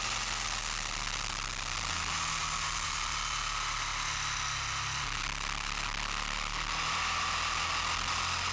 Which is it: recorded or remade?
recorded